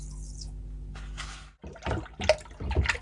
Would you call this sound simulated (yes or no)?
no